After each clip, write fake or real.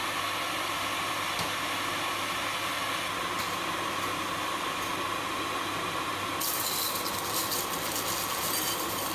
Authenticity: real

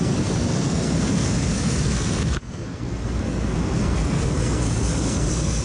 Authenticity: fake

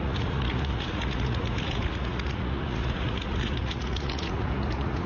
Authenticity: fake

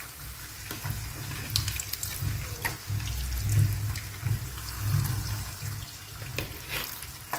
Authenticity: real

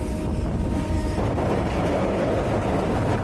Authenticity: real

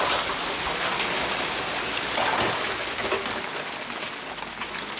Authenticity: real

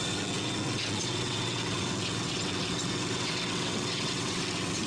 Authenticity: fake